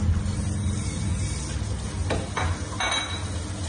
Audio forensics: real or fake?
real